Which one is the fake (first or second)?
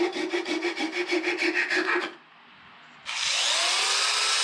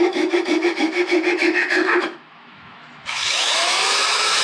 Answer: second